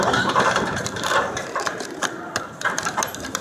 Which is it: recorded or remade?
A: remade